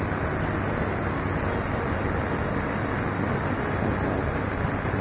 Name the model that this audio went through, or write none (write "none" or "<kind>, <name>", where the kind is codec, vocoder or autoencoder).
none